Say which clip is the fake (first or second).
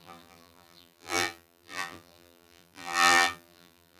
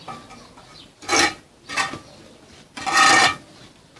first